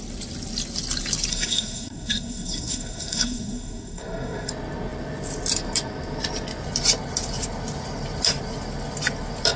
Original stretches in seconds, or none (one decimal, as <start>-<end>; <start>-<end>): 0.0-1.3; 4.5-9.6